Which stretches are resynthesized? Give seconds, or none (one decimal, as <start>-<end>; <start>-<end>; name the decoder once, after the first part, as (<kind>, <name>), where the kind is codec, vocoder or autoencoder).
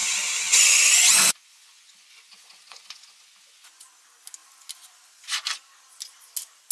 0.0-4.0 (vocoder, Vocos)